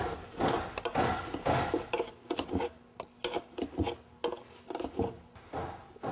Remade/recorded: recorded